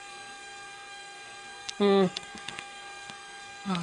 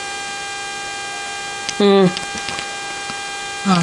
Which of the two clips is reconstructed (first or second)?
first